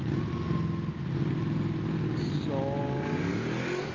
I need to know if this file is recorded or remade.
recorded